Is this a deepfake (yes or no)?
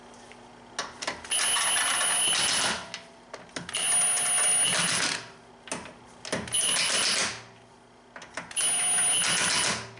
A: no